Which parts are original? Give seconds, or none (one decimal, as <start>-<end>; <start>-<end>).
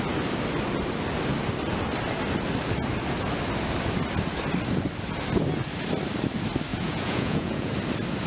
0.0-6.7; 7.7-8.3